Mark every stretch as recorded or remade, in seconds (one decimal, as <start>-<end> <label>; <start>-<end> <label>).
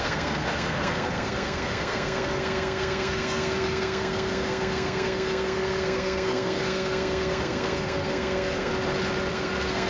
0.0-8.7 remade; 8.7-9.3 recorded; 9.3-9.9 remade